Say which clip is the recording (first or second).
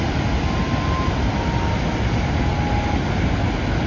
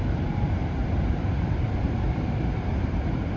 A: first